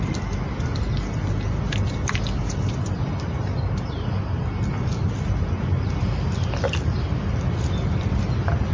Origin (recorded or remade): recorded